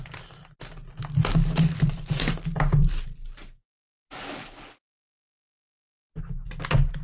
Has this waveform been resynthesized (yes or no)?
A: no